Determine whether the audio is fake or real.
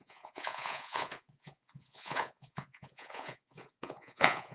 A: fake